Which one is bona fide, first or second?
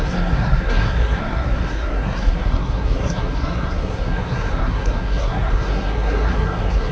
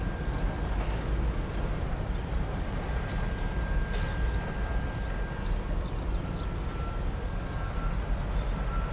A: second